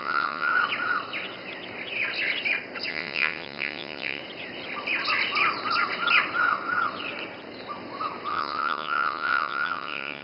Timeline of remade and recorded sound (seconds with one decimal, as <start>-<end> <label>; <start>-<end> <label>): 0.0-0.5 remade; 0.5-2.9 recorded; 2.9-4.2 remade; 4.2-8.3 recorded; 8.3-10.2 remade